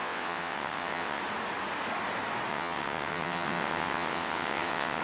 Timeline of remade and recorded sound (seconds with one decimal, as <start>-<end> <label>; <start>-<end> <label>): 0.0-1.2 remade; 1.2-2.5 recorded; 2.5-5.0 remade